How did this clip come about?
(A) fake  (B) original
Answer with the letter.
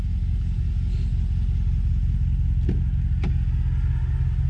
B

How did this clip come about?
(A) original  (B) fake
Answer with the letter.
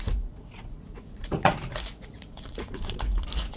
B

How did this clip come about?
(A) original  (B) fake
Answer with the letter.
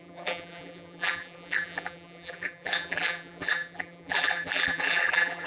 B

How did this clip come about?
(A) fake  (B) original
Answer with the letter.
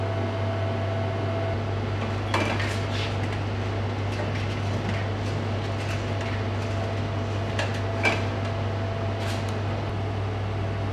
B